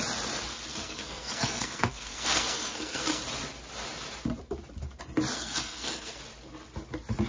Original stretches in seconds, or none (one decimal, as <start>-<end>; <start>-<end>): 0.0-0.7; 3.2-5.3; 6.2-7.3